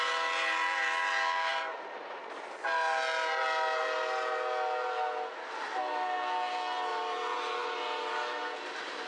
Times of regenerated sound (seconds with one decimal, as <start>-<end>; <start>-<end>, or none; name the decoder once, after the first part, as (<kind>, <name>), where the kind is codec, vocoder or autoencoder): 1.5-2.2 (vocoder, BigVGAN v2); 6.9-8.4